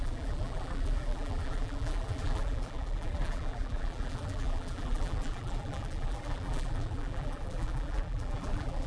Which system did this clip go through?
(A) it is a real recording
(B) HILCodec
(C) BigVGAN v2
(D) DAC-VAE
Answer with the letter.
C